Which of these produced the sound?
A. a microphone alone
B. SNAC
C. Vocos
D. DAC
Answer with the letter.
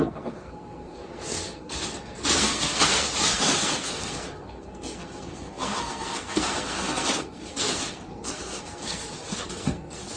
B